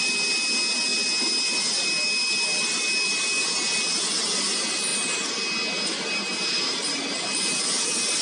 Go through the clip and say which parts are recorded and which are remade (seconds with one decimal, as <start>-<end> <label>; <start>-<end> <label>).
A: 0.0-8.2 recorded